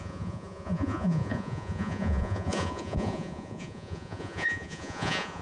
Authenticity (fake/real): fake